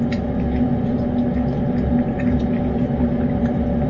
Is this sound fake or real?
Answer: real